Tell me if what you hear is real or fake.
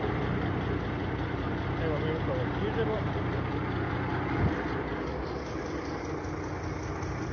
real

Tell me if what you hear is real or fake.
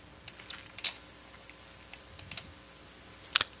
real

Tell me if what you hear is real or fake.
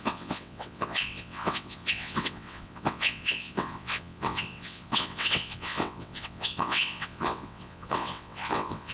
fake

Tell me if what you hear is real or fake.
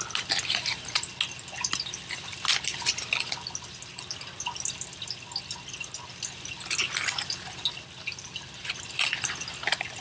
real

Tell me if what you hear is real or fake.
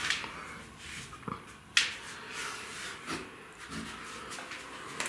real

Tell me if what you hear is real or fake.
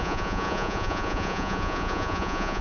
fake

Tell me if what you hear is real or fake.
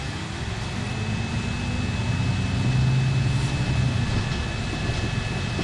real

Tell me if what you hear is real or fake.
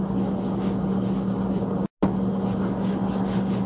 real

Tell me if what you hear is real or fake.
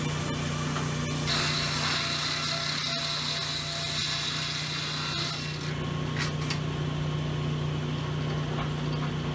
real